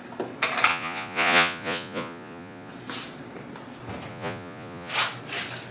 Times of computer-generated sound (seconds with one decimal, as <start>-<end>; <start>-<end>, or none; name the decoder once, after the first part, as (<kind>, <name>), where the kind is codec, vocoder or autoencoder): 0.7-2.7 (vocoder, Vocos); 4.1-4.9

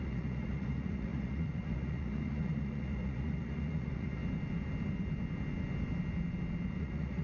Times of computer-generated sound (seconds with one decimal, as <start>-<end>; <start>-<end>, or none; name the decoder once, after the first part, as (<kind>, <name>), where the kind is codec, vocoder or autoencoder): 0.0-4.2 (vocoder, Vocos); 6.8-7.2

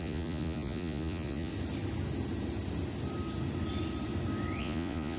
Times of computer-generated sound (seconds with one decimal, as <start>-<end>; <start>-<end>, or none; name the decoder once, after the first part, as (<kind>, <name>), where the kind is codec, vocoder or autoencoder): 0.0-1.5 (vocoder, Vocos); 4.6-5.2

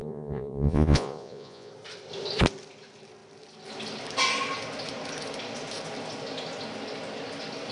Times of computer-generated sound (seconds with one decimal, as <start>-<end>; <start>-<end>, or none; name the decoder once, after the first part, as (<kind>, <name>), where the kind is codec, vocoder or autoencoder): 0.0-1.7 (vocoder, Vocos)

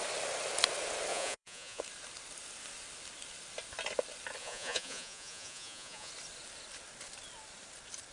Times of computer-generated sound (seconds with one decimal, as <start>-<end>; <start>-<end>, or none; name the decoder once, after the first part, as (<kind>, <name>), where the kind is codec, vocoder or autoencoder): 1.1-1.8 (vocoder, Vocos); 4.4-6.1

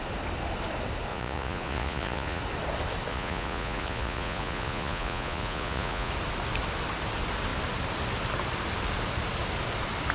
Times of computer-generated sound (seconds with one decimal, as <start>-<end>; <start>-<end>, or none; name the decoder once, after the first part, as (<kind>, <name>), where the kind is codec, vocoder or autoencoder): 1.1-2.4 (vocoder, Vocos); 3.1-6.1

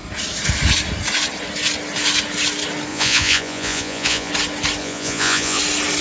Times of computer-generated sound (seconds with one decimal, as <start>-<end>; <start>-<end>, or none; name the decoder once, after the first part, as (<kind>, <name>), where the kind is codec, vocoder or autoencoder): 2.9-4.3 (vocoder, Vocos); 4.8-5.6

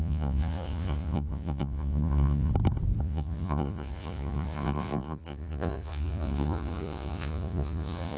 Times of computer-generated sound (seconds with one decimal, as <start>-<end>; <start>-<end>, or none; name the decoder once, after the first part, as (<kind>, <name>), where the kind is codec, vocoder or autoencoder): 0.0-2.5 (vocoder, Vocos); 3.0-8.2